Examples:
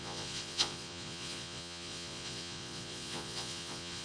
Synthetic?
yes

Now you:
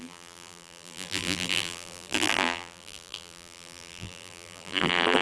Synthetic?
yes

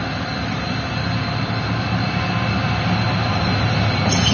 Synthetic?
no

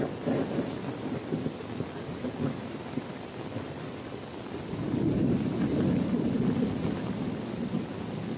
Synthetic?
no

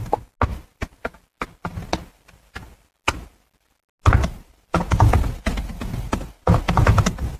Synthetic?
no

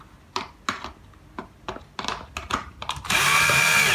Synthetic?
no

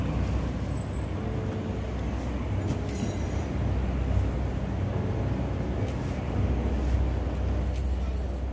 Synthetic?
no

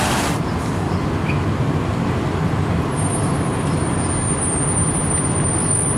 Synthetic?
no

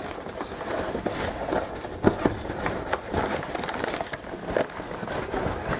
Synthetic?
no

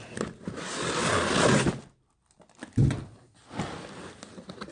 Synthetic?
no